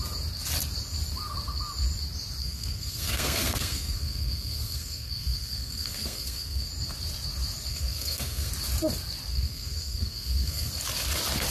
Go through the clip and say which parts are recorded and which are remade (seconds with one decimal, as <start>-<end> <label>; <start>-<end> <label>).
0.0-2.4 recorded; 2.4-6.7 remade; 6.7-7.7 recorded; 7.7-8.5 remade; 8.5-9.3 recorded; 9.3-10.7 remade; 10.7-11.5 recorded